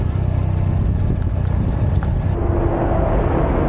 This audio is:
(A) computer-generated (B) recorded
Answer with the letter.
B